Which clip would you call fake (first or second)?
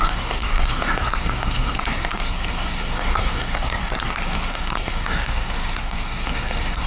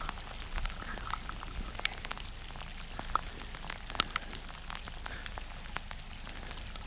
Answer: first